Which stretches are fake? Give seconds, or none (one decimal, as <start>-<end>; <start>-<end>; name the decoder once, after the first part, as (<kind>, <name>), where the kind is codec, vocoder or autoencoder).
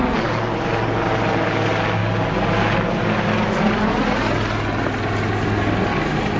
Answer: none